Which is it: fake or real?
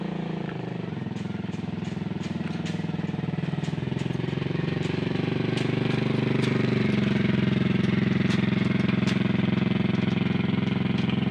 fake